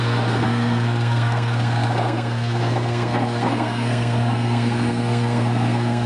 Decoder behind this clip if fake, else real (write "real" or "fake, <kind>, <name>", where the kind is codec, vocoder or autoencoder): fake, codec, SNAC